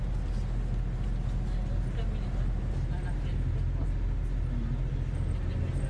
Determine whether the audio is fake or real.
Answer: real